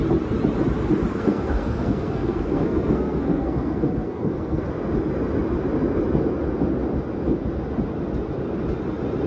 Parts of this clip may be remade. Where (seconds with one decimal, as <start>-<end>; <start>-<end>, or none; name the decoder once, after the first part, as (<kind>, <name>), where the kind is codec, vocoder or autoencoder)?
1.1-4.6 (codec, SNAC)